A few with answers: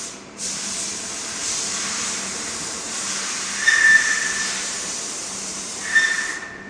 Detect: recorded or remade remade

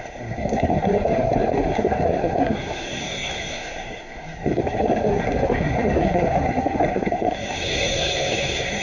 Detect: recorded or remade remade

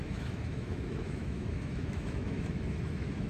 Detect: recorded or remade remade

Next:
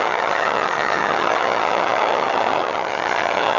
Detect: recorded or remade remade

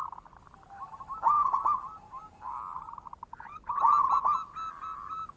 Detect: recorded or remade recorded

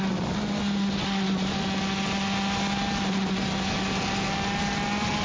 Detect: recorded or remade recorded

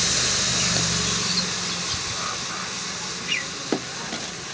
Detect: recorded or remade recorded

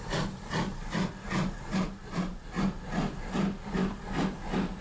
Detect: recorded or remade recorded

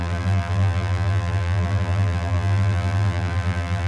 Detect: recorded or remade remade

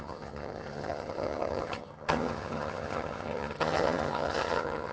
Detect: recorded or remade remade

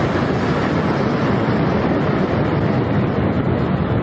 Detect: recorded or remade recorded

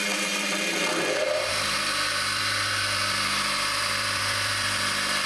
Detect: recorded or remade recorded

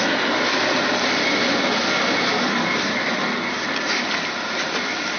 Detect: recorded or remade recorded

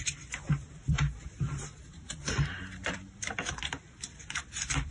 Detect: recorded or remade remade